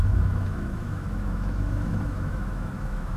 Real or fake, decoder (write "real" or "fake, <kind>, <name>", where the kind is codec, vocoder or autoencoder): fake, autoencoder, DAC-VAE